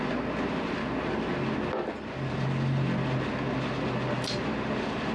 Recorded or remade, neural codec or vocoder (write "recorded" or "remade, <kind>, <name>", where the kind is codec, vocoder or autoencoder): recorded